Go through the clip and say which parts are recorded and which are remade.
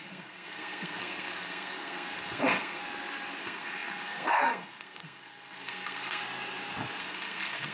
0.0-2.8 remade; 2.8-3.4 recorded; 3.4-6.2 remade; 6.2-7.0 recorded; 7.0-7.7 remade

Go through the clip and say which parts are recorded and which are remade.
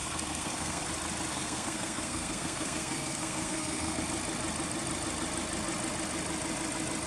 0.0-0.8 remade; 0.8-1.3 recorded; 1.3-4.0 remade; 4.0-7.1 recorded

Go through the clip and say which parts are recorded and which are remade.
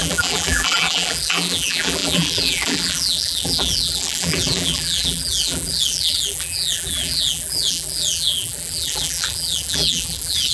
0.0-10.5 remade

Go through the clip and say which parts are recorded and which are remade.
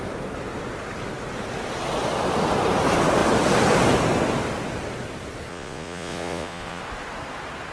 0.0-5.5 recorded; 5.5-6.8 remade; 6.8-7.7 recorded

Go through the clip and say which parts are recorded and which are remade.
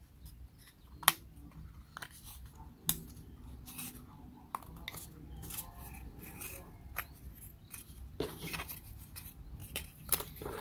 0.0-9.6 recorded; 9.6-10.6 remade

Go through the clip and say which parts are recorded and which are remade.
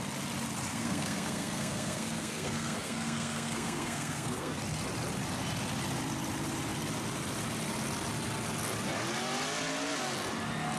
0.0-0.7 recorded; 0.7-4.6 remade; 4.6-10.8 recorded